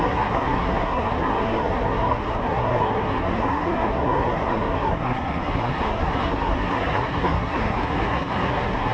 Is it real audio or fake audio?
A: fake